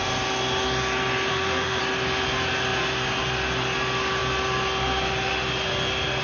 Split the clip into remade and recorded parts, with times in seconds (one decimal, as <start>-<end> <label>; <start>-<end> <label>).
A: 0.0-1.3 recorded; 1.3-1.8 remade; 1.8-6.2 recorded